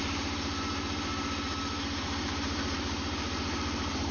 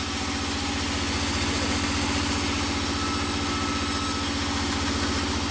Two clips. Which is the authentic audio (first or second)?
second